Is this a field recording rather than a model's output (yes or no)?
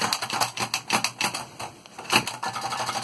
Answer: yes